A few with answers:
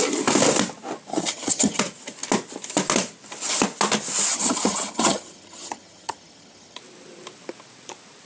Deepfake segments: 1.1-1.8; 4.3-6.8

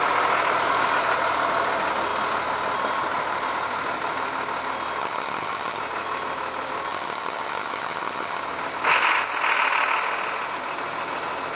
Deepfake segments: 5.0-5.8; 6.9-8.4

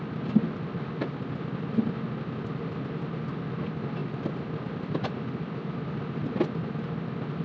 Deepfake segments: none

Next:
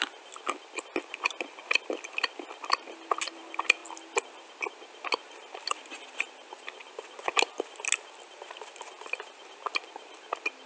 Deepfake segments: none

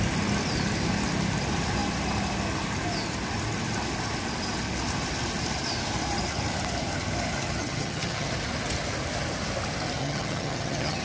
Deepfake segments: 7.6-8.3; 10.0-11.0

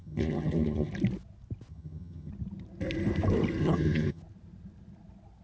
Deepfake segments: 0.0-0.9; 1.7-2.3; 3.6-4.2

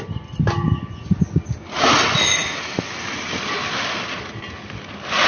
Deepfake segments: none